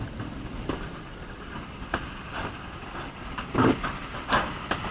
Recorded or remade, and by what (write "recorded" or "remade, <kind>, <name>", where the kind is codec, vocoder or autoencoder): recorded